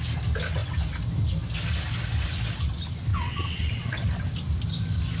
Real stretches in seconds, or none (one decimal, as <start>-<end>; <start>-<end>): 0.0-3.1; 4.2-5.2